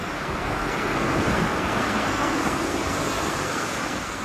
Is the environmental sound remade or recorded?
remade